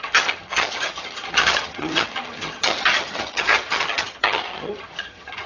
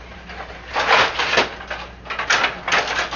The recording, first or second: second